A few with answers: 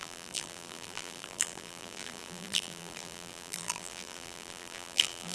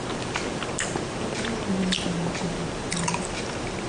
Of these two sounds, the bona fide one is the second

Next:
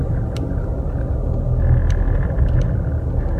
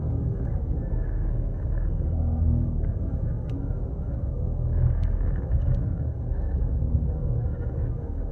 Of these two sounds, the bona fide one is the first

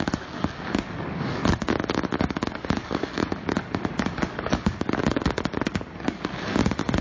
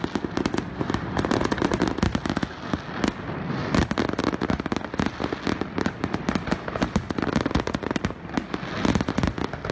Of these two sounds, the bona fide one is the second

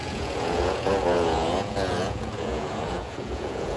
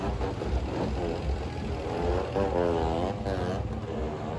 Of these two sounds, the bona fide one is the second